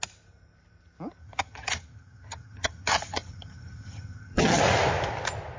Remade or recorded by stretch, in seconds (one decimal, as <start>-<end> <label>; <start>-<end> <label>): 0.0-1.2 recorded; 1.2-4.6 remade; 4.6-5.6 recorded